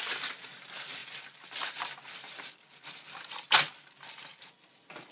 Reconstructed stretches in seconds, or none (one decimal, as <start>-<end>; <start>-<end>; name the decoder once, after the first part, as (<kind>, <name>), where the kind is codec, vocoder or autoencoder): none